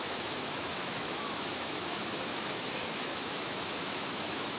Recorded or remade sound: remade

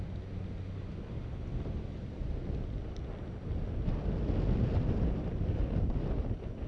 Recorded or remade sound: recorded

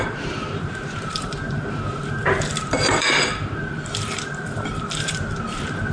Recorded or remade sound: remade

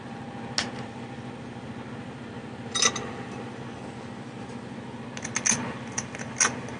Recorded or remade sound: recorded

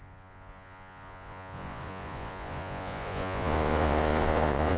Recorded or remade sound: remade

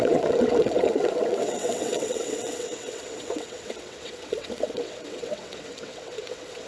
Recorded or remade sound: remade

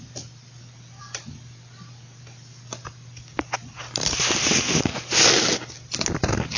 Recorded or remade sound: recorded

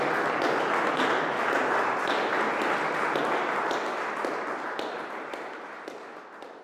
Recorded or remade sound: recorded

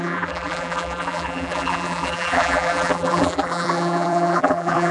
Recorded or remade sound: remade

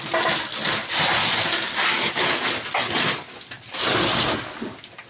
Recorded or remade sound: recorded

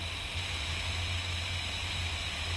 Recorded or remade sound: recorded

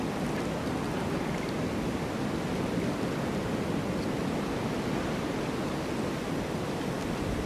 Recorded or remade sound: recorded